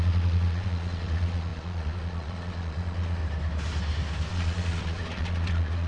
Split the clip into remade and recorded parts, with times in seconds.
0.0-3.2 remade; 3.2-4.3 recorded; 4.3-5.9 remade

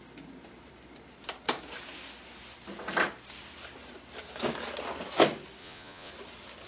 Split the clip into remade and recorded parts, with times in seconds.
0.0-5.6 recorded; 5.6-6.1 remade; 6.1-6.7 recorded

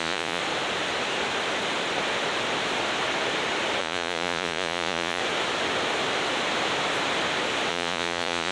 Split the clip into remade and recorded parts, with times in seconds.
0.0-0.4 remade; 0.4-3.8 recorded; 3.8-5.2 remade; 5.2-7.7 recorded; 7.7-8.5 remade

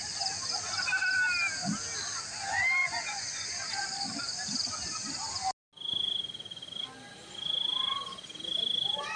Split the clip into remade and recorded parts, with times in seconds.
0.0-2.8 recorded; 2.8-3.7 remade; 3.7-9.2 recorded